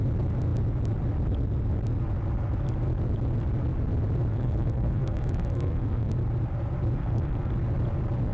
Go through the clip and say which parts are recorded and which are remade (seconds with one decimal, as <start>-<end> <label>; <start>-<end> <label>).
0.0-4.3 recorded; 4.3-6.1 remade; 6.1-7.0 recorded; 7.0-7.5 remade; 7.5-8.3 recorded